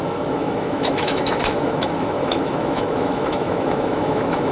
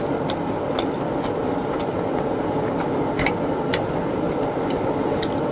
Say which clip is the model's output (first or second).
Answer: first